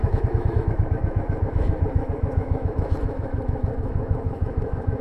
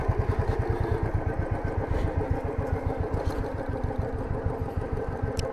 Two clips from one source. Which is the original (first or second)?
second